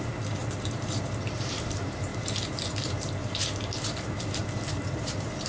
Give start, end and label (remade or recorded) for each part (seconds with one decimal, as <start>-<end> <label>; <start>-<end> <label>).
0.0-5.5 remade